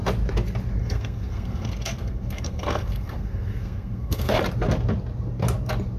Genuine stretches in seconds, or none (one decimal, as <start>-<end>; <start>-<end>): 0.0-0.8; 4.4-6.0